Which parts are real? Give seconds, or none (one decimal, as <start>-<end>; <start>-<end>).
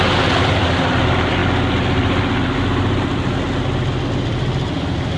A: 0.0-5.2